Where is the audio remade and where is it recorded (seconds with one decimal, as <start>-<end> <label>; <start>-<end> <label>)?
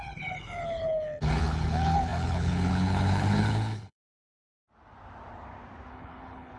0.0-4.5 remade; 4.5-5.9 recorded; 5.9-6.6 remade